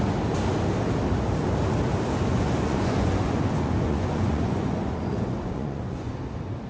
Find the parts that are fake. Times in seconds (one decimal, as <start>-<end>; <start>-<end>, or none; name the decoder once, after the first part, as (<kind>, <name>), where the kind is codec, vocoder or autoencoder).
2.3-6.1 (vocoder, Vocos)